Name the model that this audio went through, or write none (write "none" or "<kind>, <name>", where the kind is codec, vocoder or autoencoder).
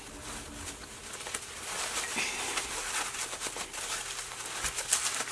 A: none